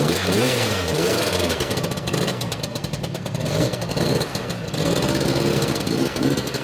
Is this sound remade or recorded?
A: remade